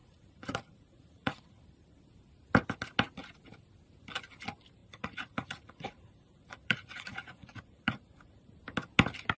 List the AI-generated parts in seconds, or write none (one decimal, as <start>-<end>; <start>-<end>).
0.0-1.6; 4.8-8.5